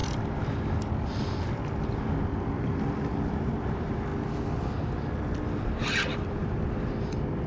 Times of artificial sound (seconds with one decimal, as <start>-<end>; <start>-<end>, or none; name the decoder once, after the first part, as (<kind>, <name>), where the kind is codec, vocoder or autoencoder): 3.3-4.1 (vocoder, BigVGAN v2); 6.3-7.5